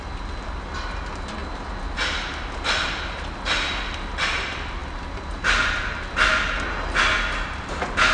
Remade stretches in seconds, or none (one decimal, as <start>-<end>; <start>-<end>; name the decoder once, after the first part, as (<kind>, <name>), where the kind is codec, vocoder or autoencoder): none